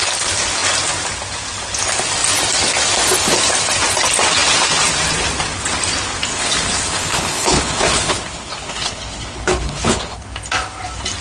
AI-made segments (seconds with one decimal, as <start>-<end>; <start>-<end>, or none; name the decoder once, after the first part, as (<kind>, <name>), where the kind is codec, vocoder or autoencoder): 6.3-10.3 (codec, HILCodec)